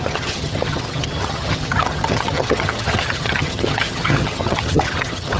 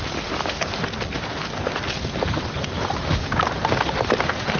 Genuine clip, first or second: second